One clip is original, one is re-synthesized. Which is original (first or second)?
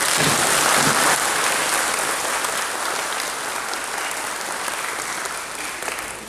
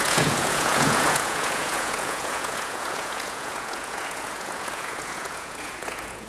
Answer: first